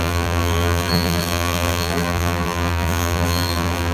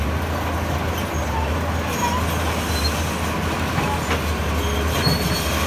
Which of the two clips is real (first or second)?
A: second